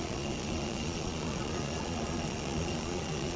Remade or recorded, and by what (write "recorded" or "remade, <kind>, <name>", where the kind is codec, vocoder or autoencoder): remade, vocoder, Vocos